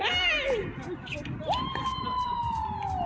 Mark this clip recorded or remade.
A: recorded